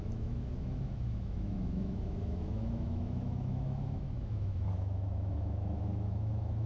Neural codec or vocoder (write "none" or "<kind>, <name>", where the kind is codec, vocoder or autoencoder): autoencoder, DAC-VAE